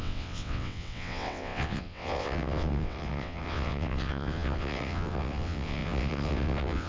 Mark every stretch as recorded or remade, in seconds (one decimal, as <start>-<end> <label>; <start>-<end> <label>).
0.0-6.9 remade